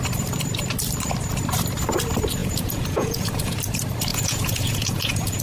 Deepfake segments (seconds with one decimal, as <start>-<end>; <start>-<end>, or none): 2.4-3.6; 4.1-5.4